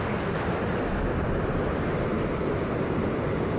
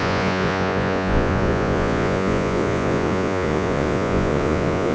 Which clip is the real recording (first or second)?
first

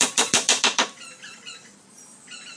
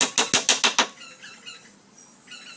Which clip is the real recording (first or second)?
second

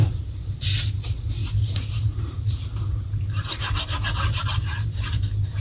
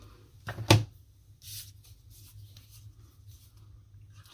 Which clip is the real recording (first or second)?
second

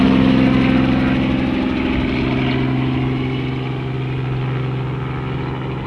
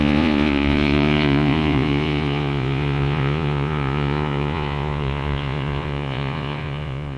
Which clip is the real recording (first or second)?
first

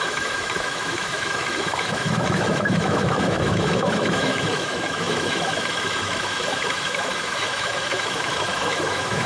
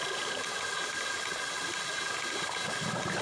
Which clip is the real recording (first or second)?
second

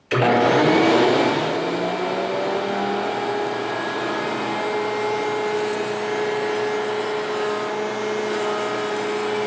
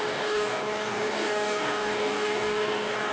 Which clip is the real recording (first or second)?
first